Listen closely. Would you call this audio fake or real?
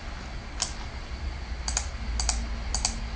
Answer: real